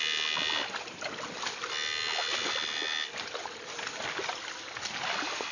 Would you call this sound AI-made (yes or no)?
no